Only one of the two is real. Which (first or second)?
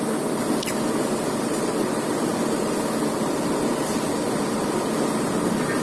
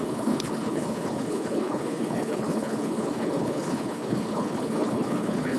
first